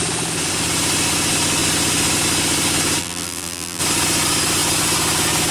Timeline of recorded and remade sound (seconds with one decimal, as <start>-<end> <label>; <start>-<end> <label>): 0.0-3.0 recorded; 3.0-3.8 remade; 3.8-5.5 recorded